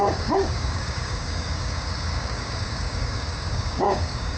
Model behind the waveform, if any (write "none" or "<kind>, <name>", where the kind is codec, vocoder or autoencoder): codec, DAC